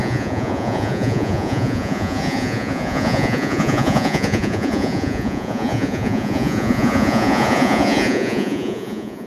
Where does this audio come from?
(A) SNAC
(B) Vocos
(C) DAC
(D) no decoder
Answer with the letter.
B